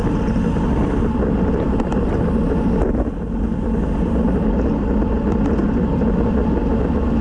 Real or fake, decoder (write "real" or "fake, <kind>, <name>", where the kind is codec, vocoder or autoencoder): real